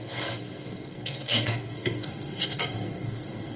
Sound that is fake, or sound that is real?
fake